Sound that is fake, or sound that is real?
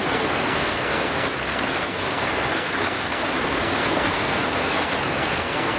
fake